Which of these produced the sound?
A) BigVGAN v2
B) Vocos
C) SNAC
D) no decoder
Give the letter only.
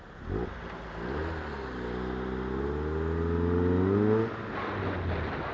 D